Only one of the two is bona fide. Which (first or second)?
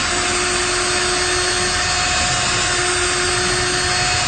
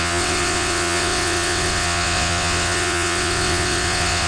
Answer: first